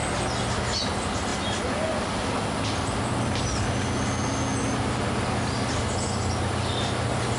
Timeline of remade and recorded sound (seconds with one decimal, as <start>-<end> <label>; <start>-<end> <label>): 0.0-7.4 recorded